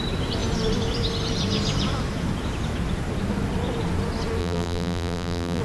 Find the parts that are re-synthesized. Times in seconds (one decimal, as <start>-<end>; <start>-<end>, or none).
4.4-5.6